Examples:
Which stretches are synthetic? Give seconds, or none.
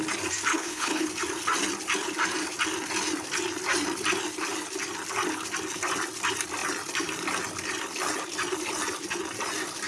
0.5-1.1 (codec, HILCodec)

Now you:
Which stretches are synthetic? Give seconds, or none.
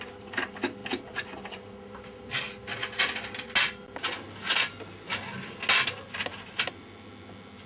none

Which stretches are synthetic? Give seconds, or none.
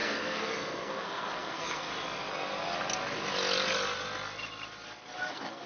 0.0-1.9 (codec, SNAC); 5.3-5.7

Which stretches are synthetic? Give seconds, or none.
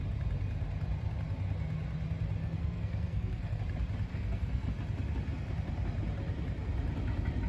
2.4-3.6 (codec, SNAC); 4.1-4.7